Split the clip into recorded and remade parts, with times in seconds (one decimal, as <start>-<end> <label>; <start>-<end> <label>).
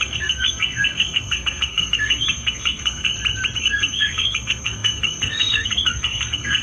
0.0-3.1 remade; 3.1-3.6 recorded; 3.6-6.6 remade